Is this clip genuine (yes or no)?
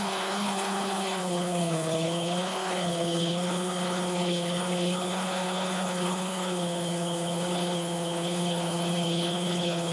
no